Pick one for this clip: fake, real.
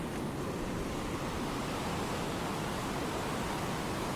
real